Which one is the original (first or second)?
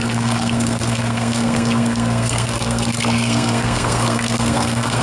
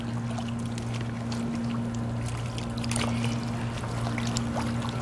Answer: second